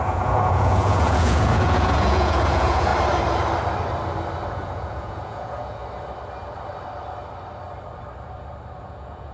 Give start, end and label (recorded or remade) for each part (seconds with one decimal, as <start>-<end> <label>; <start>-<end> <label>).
0.0-2.9 remade; 2.9-4.5 recorded; 4.5-5.8 remade; 5.8-8.8 recorded; 8.8-9.3 remade

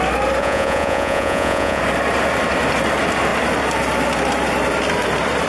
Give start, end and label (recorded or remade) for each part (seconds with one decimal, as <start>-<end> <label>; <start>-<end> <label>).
0.0-0.4 recorded; 0.4-1.8 remade; 1.8-5.5 recorded

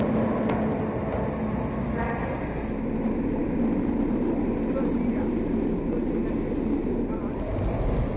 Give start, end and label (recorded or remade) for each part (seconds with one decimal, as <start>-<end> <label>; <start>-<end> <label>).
0.0-3.4 recorded; 3.4-4.1 remade; 4.1-6.8 recorded; 6.8-7.5 remade; 7.5-8.2 recorded

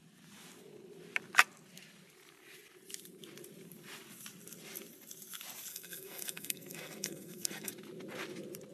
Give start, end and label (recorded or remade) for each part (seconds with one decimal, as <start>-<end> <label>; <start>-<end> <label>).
0.0-5.7 recorded; 5.7-7.7 remade; 7.7-8.7 recorded

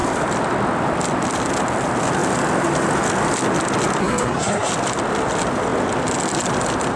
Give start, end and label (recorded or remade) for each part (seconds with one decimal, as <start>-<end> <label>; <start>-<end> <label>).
0.0-4.0 recorded; 4.0-4.7 remade; 4.7-7.0 recorded

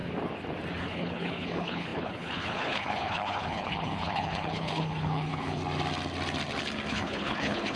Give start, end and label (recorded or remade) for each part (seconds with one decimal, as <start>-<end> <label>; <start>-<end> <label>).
0.0-0.8 recorded; 0.8-5.6 remade; 5.6-6.9 recorded; 6.9-7.8 remade

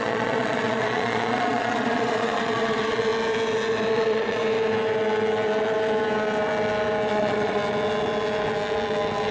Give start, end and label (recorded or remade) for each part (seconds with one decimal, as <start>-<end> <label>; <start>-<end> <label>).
0.0-3.1 remade; 3.1-3.9 recorded; 3.9-4.4 remade; 4.4-7.1 recorded; 7.1-7.6 remade; 7.6-9.3 recorded

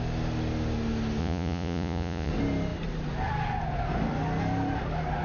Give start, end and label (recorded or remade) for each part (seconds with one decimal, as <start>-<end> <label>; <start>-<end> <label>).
0.0-1.2 recorded; 1.2-2.3 remade; 2.3-5.2 recorded